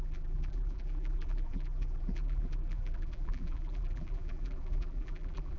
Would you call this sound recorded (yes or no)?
no